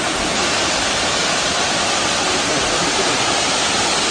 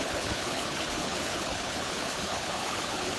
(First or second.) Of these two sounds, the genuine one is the first